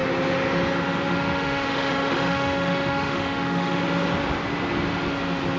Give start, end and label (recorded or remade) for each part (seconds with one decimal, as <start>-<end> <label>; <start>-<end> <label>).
0.0-1.1 recorded; 1.1-3.8 remade; 3.8-5.6 recorded